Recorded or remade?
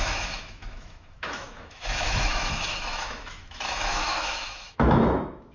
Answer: remade